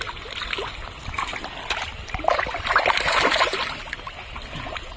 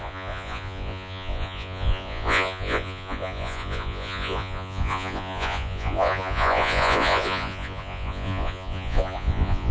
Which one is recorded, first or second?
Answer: first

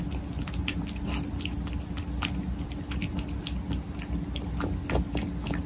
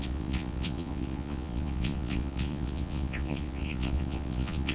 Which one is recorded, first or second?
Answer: first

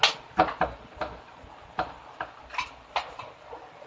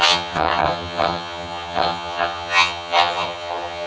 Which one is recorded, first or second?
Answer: first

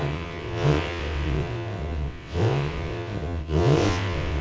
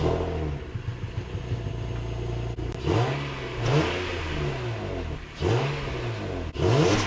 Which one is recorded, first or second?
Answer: second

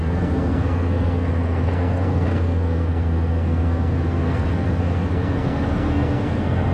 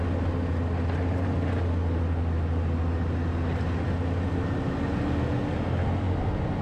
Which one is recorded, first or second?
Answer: second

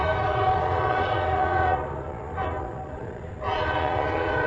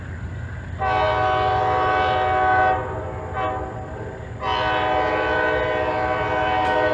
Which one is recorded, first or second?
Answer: second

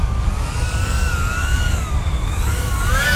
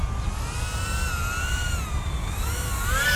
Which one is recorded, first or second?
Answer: second